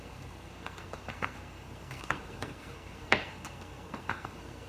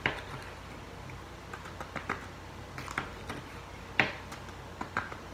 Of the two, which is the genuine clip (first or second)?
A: second